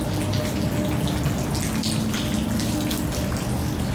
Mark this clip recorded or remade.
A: recorded